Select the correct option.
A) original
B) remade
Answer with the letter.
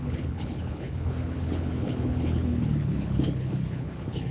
B